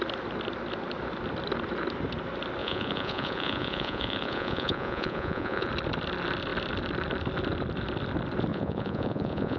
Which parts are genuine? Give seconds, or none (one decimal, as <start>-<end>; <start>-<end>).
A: 0.0-2.6; 5.7-8.5